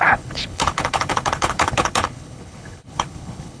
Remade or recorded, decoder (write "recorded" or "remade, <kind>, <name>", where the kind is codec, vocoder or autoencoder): remade, codec, HILCodec